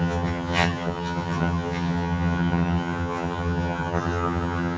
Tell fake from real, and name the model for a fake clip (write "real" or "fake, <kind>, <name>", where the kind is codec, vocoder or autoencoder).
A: fake, vocoder, HiFi-GAN